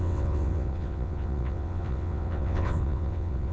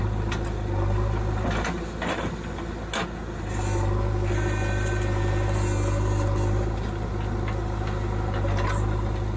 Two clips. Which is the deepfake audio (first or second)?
first